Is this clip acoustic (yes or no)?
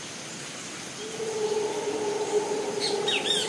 yes